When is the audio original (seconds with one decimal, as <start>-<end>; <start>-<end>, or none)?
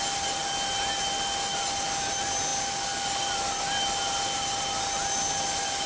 0.0-5.9